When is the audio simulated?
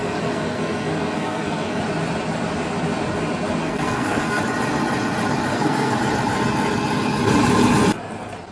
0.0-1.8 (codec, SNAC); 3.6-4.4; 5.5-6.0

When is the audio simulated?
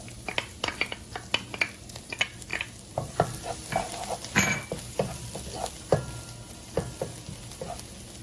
none